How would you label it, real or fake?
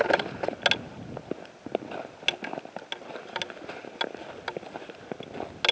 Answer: real